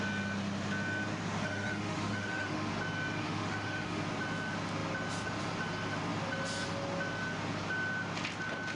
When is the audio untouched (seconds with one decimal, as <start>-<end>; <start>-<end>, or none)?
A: 0.0-1.4; 2.7-3.2; 4.0-8.8